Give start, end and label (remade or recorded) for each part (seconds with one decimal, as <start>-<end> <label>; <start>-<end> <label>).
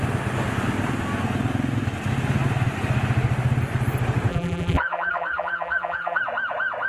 0.0-4.3 recorded; 4.3-6.2 remade; 6.2-6.9 recorded